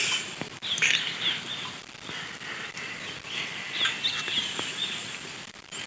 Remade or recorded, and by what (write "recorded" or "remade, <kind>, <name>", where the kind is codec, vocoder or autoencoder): recorded